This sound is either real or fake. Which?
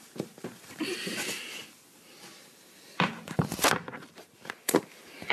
fake